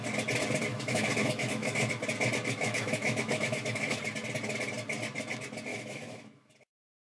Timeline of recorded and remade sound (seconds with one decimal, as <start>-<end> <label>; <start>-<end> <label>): 0.0-0.7 recorded; 0.7-1.9 remade; 1.9-2.6 recorded; 2.6-4.0 remade; 4.0-5.7 recorded; 5.7-6.5 remade; 6.5-7.2 recorded